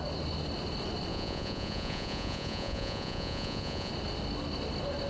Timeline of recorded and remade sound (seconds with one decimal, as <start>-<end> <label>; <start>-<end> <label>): 0.0-1.1 recorded; 1.1-3.9 remade; 3.9-5.1 recorded